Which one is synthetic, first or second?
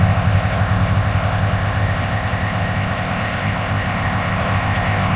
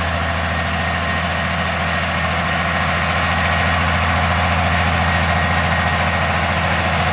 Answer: first